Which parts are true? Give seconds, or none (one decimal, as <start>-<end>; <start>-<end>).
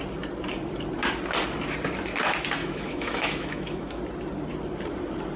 0.0-2.6; 4.0-5.4